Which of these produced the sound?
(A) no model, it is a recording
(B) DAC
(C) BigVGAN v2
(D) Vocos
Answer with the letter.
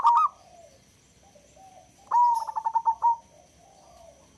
A